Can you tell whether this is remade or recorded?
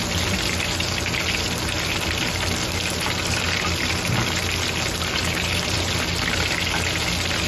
recorded